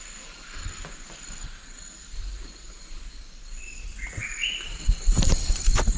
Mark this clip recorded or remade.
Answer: recorded